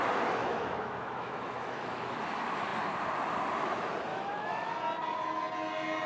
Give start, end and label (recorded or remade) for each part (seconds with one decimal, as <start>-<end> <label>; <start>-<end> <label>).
0.0-0.4 recorded; 0.4-2.2 remade; 2.2-4.1 recorded; 4.1-4.7 remade; 4.7-6.1 recorded